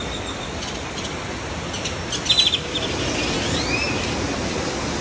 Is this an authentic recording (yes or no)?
yes